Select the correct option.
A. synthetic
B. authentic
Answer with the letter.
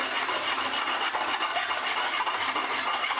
B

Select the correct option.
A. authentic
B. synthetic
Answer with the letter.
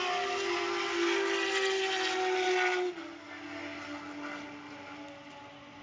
A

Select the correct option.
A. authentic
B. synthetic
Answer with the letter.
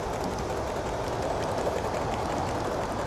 A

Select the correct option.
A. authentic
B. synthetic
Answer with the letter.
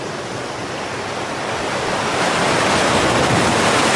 A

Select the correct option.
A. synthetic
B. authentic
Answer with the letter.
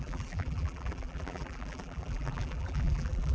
A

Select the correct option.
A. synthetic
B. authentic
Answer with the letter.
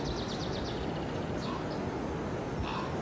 B